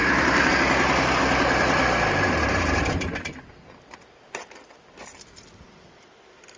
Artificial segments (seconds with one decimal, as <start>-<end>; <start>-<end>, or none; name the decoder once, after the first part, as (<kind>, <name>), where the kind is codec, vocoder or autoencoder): 0.0-0.5 (vocoder, BigVGAN v2); 1.2-4.6